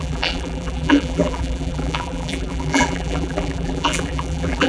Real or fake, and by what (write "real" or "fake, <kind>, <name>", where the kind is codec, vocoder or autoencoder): fake, vocoder, BigVGAN v2